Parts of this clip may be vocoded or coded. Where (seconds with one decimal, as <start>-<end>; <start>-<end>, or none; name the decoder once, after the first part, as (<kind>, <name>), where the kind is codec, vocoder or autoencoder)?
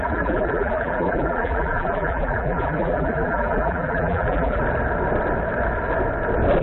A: 0.0-4.6 (vocoder, BigVGAN v2)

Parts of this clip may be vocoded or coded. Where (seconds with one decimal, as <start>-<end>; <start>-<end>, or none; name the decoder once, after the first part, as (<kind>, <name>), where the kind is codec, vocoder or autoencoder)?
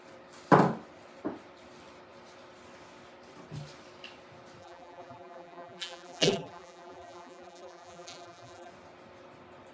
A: 4.6-8.7 (vocoder, BigVGAN v2)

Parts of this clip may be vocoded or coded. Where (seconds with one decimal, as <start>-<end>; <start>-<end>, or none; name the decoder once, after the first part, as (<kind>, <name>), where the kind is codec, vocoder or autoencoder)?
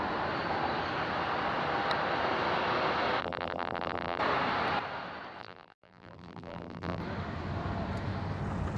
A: 3.2-4.2 (vocoder, BigVGAN v2); 5.4-7.0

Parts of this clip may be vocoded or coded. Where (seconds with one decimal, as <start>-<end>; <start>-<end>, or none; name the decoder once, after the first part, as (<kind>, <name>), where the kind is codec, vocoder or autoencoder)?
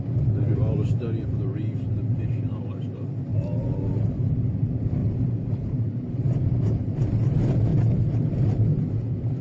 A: 5.0-6.9 (vocoder, BigVGAN v2)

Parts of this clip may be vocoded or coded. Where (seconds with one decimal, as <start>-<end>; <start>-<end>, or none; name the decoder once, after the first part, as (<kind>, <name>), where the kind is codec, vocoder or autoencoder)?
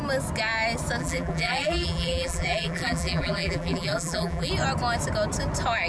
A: 1.0-4.5 (vocoder, BigVGAN v2)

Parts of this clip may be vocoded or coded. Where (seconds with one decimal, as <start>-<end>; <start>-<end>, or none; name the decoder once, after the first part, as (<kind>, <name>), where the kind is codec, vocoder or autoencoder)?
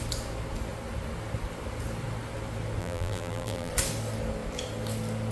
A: 2.8-3.7 (vocoder, BigVGAN v2)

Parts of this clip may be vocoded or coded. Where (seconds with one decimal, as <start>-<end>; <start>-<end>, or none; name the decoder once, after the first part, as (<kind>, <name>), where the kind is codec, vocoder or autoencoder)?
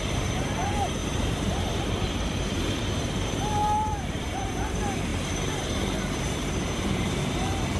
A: 0.0-7.8 (vocoder, BigVGAN v2)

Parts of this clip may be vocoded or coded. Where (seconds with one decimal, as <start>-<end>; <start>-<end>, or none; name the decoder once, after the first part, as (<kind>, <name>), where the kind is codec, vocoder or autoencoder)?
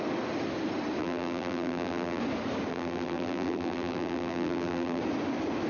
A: 1.0-2.2 (vocoder, BigVGAN v2); 2.7-5.0